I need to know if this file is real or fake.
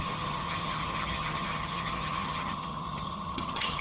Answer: fake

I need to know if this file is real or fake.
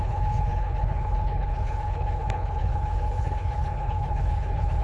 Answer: fake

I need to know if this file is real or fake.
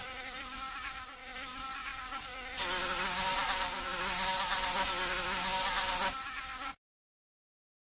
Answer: real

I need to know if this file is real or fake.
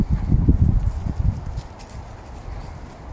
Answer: real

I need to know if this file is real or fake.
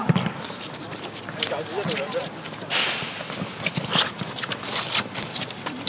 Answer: real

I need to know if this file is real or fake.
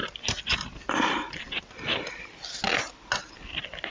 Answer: real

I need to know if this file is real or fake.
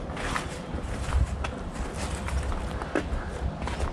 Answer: real